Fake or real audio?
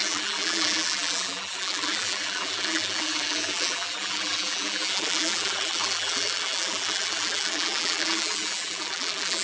fake